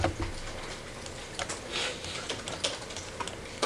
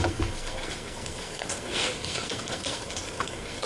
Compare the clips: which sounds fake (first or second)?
second